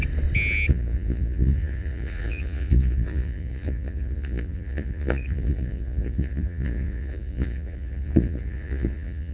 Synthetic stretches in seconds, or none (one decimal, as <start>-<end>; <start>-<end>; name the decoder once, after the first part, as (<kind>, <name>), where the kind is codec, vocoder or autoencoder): 0.7-9.3 (vocoder, Vocos)